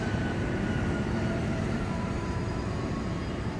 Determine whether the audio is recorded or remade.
remade